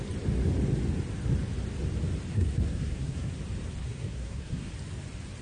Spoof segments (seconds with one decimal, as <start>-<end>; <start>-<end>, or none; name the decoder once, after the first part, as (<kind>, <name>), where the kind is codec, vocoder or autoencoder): 2.3-3.3 (codec, SNAC); 3.8-4.7